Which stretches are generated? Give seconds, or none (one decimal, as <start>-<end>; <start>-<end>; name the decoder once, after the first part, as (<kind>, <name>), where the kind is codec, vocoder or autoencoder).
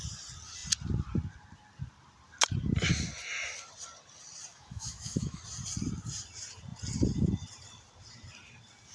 4.5-5.4 (autoencoder, DAC-VAE)